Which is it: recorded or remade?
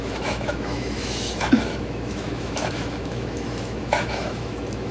remade